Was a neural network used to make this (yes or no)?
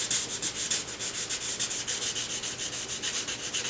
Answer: no